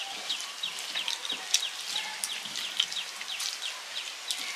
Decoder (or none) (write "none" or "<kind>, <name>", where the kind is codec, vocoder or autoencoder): none